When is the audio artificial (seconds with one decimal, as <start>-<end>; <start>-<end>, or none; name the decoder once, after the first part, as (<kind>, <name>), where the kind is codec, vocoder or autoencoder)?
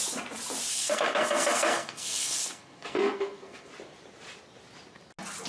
0.7-3.7 (codec, SNAC)